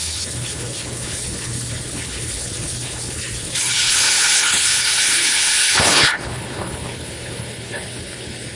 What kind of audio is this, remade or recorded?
remade